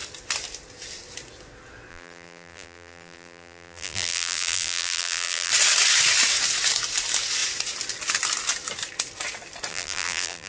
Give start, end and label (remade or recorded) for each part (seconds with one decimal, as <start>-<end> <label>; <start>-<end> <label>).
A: 0.0-1.9 recorded; 1.9-5.5 remade; 5.5-9.7 recorded; 9.7-10.5 remade